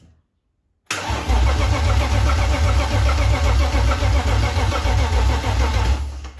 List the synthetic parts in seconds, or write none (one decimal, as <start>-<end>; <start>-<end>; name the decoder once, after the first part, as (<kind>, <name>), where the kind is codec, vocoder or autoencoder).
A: 3.6-4.2 (vocoder, BigVGAN v2)